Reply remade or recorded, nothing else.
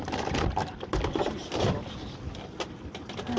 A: recorded